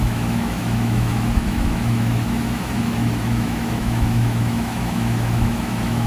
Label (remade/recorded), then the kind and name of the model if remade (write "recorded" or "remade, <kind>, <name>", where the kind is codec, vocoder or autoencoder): remade, autoencoder, DAC-VAE